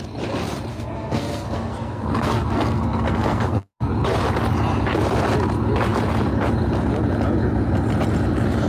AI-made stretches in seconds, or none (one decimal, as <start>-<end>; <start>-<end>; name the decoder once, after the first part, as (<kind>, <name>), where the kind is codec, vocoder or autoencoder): 0.7-3.9 (codec, SNAC)